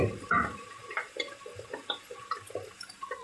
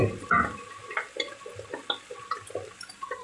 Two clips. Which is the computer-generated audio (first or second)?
first